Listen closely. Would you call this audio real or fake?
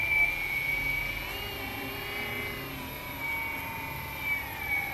real